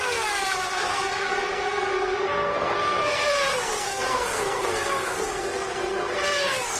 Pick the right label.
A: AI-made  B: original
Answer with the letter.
A